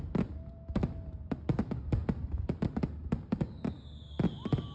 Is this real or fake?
real